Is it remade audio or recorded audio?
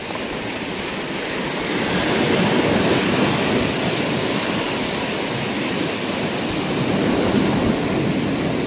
recorded